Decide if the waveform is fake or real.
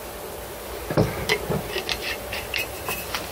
real